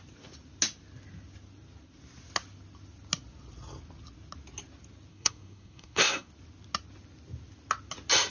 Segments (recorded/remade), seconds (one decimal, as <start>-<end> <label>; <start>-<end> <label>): 0.0-5.1 recorded; 5.1-6.3 remade; 6.3-8.3 recorded